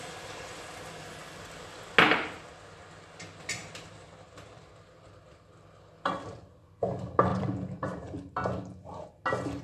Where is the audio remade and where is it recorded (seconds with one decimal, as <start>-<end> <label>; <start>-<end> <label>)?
0.0-3.6 recorded; 3.6-4.6 remade; 4.6-7.3 recorded; 7.3-8.3 remade; 8.3-9.6 recorded